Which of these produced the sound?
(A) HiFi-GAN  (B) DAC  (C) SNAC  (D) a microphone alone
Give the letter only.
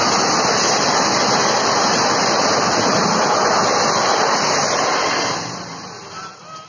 D